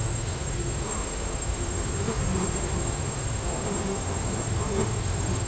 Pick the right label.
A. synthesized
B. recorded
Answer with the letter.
A